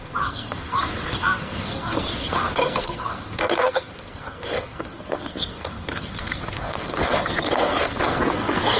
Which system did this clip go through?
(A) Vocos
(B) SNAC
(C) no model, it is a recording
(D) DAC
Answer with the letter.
B